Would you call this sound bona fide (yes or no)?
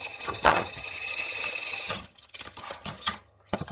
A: no